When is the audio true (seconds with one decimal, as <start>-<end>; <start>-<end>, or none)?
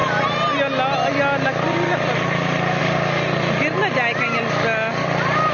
0.0-5.5